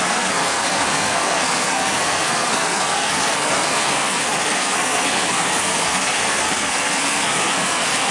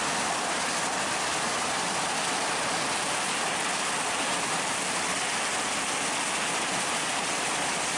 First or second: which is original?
second